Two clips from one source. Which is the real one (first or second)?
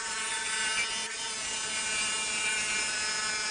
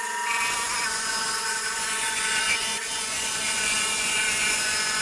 first